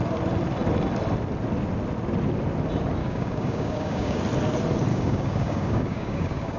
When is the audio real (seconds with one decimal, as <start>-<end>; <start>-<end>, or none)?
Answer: 0.0-3.0; 4.2-4.9